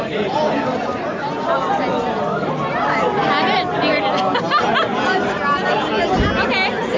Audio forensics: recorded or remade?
recorded